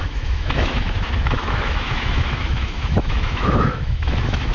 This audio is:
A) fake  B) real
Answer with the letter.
A